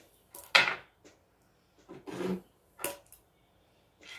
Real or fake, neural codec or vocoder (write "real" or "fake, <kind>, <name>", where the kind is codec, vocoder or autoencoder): real